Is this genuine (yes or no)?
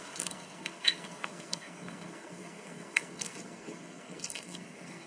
no